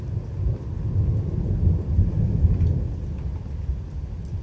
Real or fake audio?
real